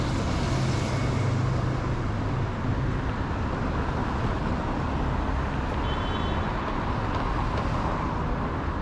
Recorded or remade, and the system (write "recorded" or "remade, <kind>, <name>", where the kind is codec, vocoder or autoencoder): recorded